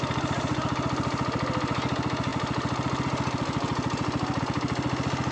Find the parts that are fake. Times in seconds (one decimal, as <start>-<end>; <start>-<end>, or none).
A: none

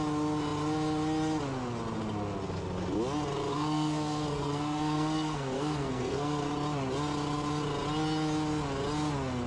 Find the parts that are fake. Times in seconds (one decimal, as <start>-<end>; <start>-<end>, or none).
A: 3.5-6.5

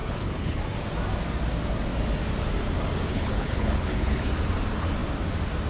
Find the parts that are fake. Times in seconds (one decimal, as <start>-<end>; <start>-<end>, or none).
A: 0.0-0.6; 3.1-4.3

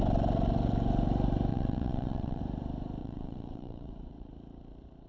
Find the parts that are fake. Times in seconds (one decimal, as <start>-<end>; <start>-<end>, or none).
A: 1.5-2.4; 3.0-4.3

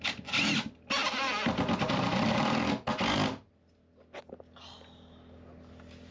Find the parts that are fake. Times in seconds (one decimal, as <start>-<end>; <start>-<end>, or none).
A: none

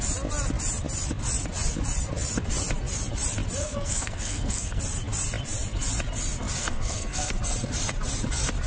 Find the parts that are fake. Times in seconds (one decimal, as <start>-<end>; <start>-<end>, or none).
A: 3.6-4.8; 6.6-7.4

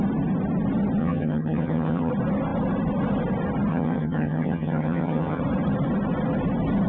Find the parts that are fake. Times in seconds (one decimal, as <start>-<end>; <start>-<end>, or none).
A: 1.0-2.1; 3.7-5.4